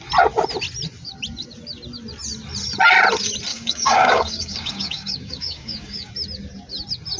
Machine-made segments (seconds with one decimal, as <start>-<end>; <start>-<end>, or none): 3.5-6.1